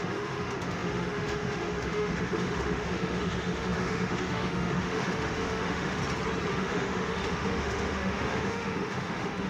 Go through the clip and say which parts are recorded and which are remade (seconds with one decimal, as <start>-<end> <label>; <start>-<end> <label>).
0.0-6.0 remade; 6.0-6.5 recorded; 6.5-9.5 remade